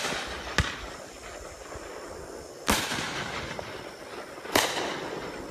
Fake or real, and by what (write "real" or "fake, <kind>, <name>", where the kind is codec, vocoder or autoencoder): real